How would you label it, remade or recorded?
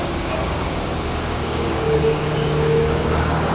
remade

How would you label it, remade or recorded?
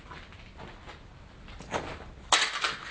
recorded